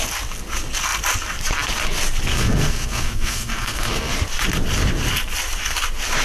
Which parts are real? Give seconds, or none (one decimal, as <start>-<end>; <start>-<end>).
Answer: 0.0-2.3; 4.1-6.2